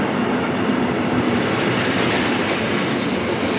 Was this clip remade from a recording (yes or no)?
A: no